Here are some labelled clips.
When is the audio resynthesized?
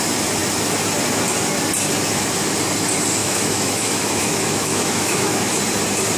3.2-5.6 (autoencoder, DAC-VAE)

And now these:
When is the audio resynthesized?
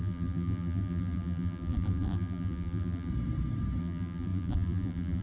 0.0-3.1 (vocoder, BigVGAN v2); 3.8-5.2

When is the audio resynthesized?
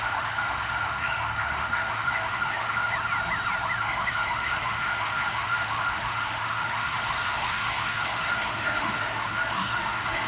0.0-2.9 (autoencoder, DAC-VAE); 3.8-10.3